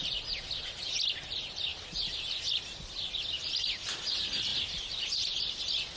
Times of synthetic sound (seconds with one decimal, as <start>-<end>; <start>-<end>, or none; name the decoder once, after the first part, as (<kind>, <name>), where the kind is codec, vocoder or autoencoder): 4.5-5.6 (vocoder, BigVGAN v2)